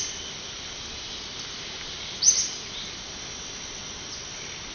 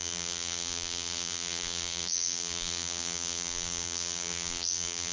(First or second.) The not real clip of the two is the second